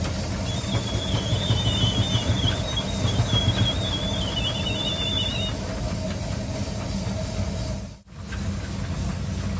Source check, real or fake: real